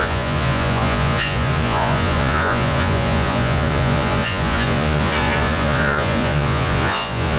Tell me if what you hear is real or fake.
fake